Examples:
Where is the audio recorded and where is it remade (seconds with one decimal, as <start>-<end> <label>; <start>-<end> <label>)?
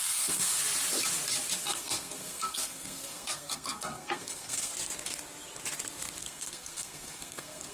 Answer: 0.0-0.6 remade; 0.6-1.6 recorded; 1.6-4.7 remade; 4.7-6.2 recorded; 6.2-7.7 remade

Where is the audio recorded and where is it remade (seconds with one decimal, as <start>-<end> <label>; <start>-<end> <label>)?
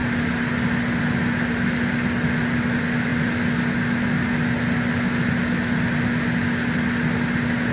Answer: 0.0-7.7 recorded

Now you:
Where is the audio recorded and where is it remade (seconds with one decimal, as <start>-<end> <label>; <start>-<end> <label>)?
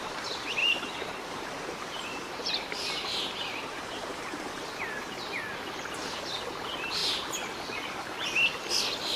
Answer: 0.0-0.6 recorded; 0.6-4.8 remade; 4.8-9.2 recorded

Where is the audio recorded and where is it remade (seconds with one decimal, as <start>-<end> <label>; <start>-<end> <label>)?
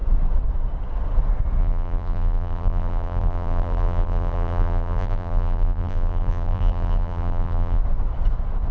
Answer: 0.0-1.6 recorded; 1.6-7.8 remade; 7.8-8.7 recorded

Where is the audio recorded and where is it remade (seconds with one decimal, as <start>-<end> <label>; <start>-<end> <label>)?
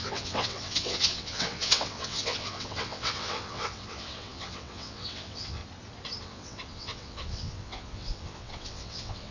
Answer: 0.0-5.6 remade; 5.6-6.2 recorded; 6.2-9.3 remade